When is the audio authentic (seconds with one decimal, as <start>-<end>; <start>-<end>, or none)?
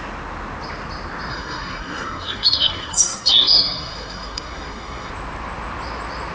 0.0-1.3; 5.1-6.3